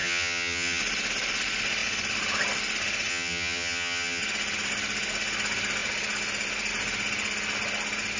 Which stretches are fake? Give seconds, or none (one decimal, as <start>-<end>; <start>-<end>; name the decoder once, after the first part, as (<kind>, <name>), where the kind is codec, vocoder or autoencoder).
0.0-0.8 (vocoder, HiFi-GAN); 3.1-4.2